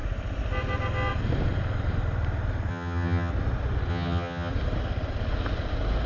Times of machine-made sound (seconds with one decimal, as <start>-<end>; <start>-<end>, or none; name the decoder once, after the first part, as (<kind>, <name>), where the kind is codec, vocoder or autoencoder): 2.7-3.3 (vocoder, HiFi-GAN); 3.9-4.5